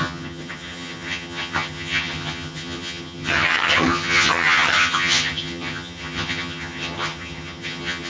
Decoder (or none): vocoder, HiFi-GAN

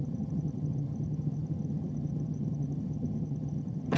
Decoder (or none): vocoder, HiFi-GAN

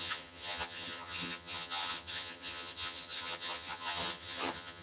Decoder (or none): vocoder, HiFi-GAN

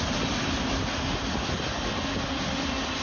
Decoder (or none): none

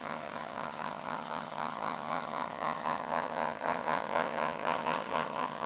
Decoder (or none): vocoder, HiFi-GAN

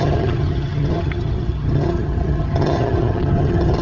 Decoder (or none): vocoder, HiFi-GAN